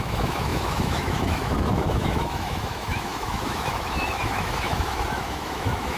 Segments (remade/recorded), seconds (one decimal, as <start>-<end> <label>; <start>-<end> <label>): 0.0-6.0 remade